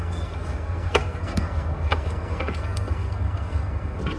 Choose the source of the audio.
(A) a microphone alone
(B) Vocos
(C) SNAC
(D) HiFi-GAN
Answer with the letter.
C